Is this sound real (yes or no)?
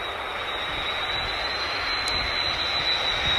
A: yes